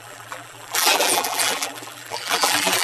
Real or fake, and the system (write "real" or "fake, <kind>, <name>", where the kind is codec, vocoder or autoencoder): fake, vocoder, BigVGAN v2